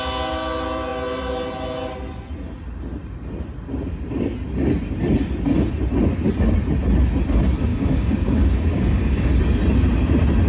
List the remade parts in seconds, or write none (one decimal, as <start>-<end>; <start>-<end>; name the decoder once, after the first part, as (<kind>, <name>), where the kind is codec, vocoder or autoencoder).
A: 7.7-9.4 (codec, DAC)

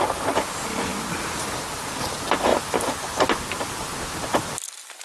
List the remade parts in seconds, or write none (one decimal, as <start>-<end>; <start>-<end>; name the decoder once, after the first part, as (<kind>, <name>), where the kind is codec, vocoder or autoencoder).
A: none